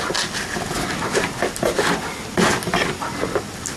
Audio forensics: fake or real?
real